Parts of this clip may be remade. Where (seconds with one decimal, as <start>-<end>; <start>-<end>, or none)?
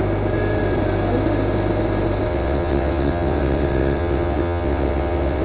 2.3-5.4